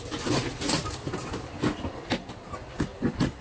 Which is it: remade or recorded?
recorded